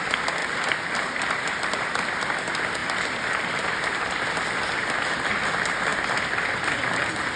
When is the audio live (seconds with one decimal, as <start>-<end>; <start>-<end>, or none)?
0.0-0.4; 2.2-2.8; 5.0-7.4